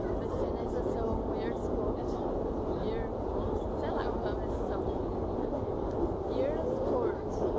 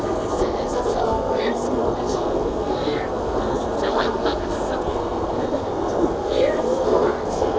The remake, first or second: second